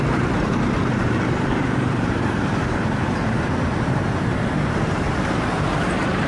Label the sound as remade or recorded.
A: remade